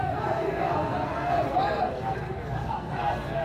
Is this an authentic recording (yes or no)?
no